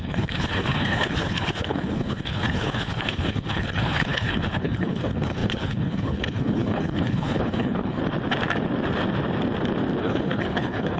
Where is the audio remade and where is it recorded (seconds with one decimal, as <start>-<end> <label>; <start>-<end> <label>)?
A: 0.0-8.0 remade; 8.0-10.0 recorded; 10.0-11.0 remade